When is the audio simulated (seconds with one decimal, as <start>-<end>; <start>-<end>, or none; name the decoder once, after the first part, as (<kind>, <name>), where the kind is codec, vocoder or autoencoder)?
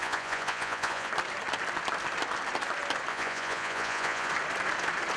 0.0-1.1 (vocoder, Vocos); 3.1-4.3